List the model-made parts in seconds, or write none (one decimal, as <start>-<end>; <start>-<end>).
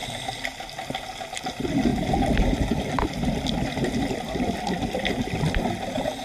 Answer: 1.9-5.6